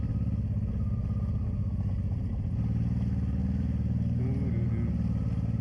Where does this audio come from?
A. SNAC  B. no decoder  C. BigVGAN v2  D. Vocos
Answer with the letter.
B